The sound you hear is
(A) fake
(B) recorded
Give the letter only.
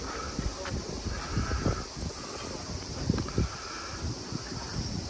B